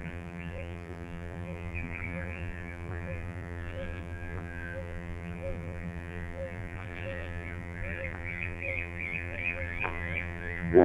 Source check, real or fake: fake